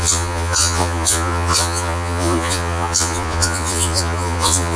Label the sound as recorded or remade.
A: remade